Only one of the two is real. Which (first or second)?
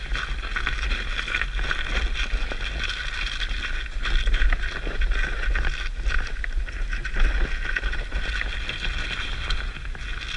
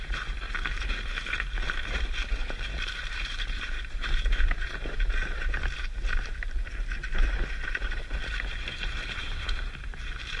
first